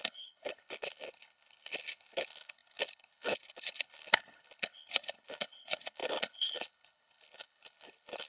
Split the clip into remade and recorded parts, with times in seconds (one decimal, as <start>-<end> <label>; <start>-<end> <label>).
0.0-8.3 remade